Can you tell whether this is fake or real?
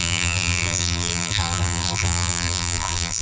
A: fake